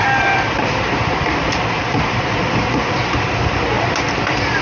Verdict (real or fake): real